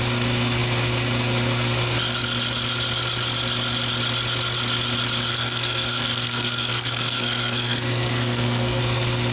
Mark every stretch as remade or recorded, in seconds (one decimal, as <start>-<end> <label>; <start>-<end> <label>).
0.0-5.3 recorded; 5.3-8.8 remade; 8.8-9.3 recorded